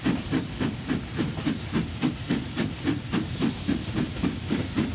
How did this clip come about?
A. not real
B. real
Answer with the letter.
A